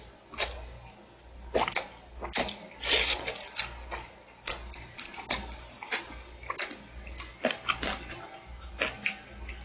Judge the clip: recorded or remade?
recorded